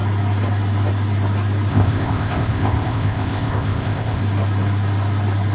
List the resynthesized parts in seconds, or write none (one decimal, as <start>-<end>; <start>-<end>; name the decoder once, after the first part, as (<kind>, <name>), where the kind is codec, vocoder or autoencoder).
1.7-4.2 (codec, ZipCodec)